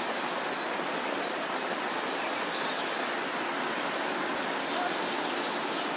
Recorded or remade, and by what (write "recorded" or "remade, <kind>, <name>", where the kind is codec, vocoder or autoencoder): recorded